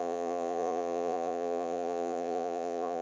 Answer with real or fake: fake